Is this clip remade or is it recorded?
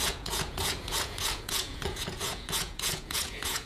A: remade